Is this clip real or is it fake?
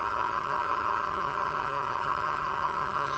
fake